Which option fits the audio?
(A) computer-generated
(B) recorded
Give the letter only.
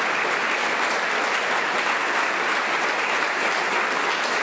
B